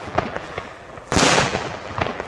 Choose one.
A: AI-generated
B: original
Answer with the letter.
A